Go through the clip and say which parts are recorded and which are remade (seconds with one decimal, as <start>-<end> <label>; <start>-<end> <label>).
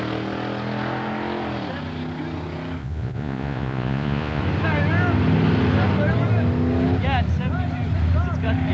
0.0-2.8 recorded; 2.8-4.4 remade; 4.4-8.7 recorded